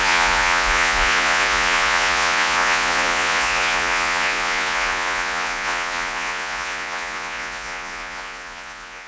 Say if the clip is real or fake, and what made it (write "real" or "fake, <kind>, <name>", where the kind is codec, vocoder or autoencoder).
fake, vocoder, Vocos